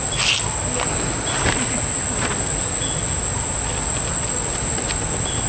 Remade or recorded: recorded